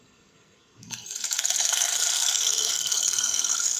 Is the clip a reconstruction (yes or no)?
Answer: yes